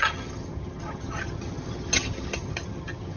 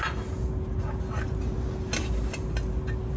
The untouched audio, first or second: second